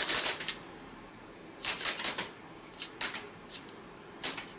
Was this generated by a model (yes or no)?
no